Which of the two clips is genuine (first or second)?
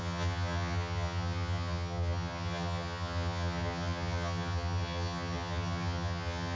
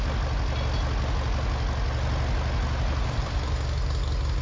second